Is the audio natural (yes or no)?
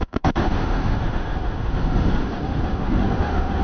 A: no